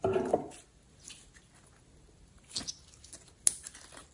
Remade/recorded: recorded